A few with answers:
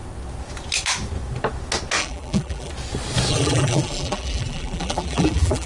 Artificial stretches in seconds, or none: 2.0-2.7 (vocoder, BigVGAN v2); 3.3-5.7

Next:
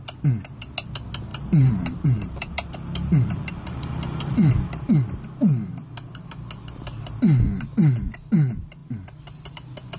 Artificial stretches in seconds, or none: 1.3-4.5 (vocoder, BigVGAN v2)

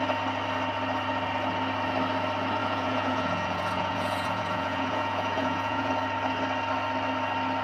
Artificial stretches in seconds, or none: 2.6-5.9 (vocoder, Vocos)

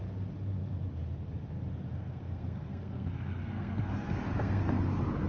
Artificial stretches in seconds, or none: 2.0-4.8 (codec, SNAC)

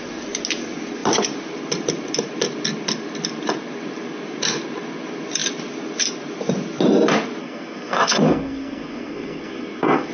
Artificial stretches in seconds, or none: 7.4-10.1 (codec, SNAC)

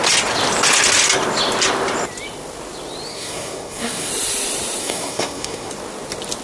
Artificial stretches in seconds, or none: 3.1-4.1 (codec, SNAC); 4.8-5.7

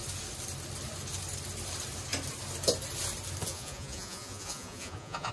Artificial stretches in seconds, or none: 3.5-5.3 (vocoder, Vocos)